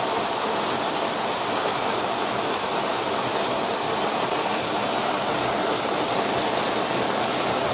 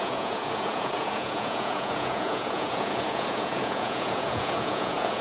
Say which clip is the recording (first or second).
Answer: first